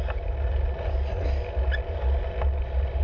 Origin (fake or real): real